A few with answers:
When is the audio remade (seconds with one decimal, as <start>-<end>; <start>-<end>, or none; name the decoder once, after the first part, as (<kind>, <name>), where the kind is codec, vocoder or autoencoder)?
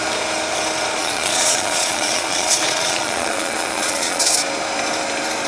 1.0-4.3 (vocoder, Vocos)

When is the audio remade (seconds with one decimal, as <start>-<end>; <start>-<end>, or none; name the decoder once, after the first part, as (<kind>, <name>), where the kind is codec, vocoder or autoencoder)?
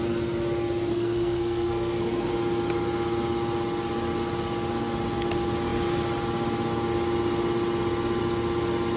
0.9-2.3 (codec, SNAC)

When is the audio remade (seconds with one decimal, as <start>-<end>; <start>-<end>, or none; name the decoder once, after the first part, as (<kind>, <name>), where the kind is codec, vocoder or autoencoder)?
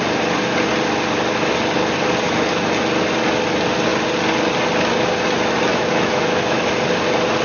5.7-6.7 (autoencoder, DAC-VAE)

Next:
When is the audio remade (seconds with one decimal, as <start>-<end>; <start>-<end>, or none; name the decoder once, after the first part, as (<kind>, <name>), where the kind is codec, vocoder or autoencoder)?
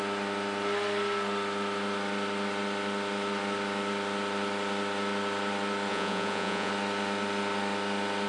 5.9-6.7 (vocoder, Vocos)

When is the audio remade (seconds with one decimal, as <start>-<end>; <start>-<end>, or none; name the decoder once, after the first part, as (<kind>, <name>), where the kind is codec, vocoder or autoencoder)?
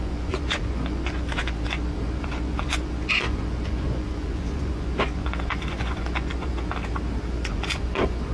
0.0-6.5 (vocoder, Vocos); 7.3-8.3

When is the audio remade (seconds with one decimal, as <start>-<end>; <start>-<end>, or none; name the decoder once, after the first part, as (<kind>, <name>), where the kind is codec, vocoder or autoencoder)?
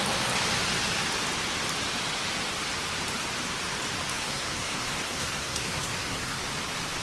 4.1-6.4 (codec, SNAC)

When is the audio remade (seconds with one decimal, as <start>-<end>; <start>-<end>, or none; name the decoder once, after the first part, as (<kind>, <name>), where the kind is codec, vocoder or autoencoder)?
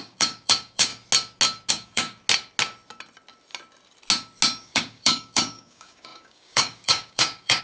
0.0-0.9 (codec, DAC); 1.7-2.2; 4.6-7.6